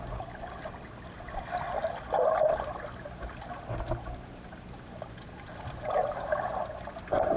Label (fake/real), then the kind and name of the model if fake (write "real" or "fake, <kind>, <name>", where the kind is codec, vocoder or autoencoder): real